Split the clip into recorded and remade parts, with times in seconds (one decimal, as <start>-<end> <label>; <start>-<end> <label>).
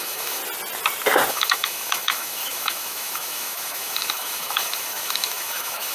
0.0-0.4 remade; 0.4-1.3 recorded; 1.3-5.9 remade